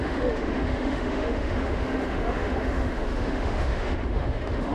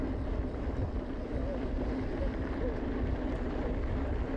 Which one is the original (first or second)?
second